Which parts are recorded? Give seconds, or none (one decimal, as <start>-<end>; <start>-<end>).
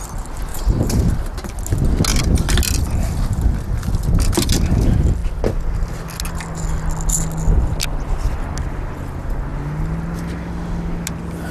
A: 0.0-0.5; 1.5-11.5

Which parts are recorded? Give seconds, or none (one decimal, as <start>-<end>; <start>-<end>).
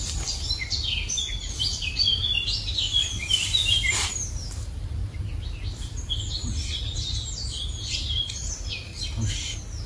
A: 2.2-3.0; 5.0-5.8; 8.9-9.9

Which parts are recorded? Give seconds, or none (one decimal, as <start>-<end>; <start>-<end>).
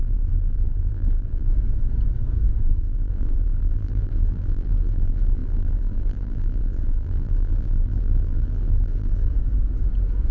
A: 1.5-2.7; 9.3-10.3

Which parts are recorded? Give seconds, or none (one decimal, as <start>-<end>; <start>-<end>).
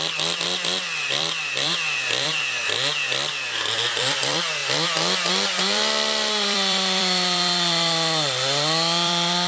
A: 2.6-4.0